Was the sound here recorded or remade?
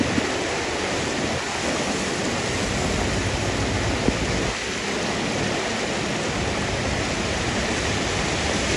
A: recorded